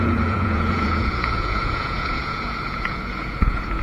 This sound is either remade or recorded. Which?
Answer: remade